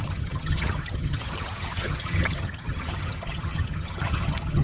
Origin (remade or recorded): remade